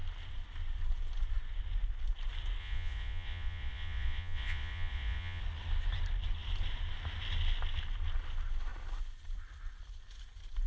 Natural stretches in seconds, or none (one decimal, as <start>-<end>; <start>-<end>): 0.0-2.6; 5.4-10.7